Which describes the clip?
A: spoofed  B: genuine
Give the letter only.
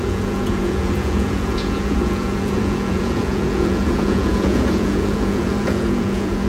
A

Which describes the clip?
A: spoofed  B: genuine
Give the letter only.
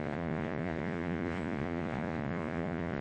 A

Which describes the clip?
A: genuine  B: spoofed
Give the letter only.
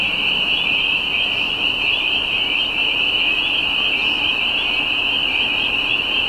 A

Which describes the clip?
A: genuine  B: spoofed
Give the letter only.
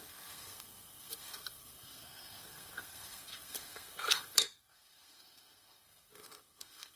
B